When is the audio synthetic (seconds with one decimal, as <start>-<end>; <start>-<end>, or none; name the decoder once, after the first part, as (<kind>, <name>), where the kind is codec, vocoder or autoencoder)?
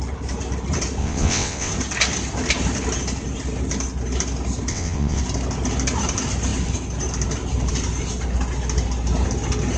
1.0-1.7 (vocoder, WaveNeXt); 4.7-5.2